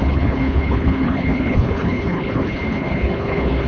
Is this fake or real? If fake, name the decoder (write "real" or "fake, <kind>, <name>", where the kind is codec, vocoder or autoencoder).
fake, codec, HILCodec